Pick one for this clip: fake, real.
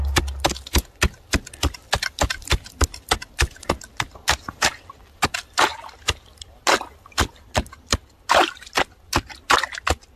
real